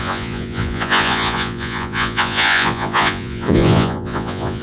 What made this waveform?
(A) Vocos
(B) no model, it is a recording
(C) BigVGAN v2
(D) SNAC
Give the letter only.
A